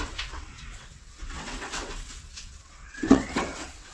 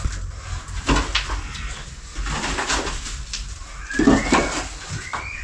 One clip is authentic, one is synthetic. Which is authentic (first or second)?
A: second